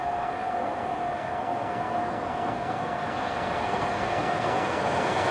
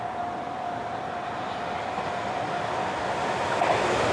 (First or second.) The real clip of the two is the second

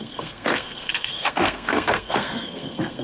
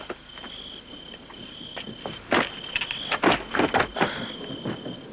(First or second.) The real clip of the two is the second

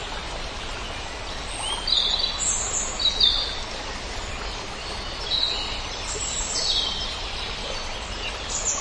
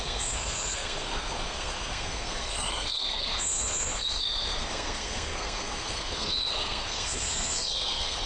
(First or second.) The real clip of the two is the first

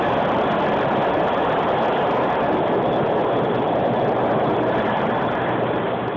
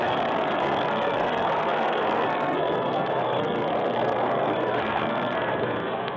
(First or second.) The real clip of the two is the first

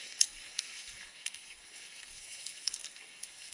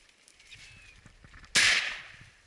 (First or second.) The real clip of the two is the second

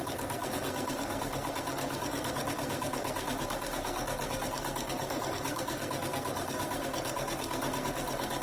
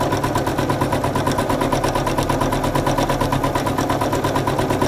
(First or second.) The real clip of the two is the second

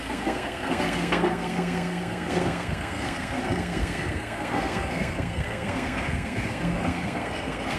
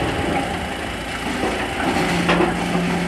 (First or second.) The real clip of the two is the second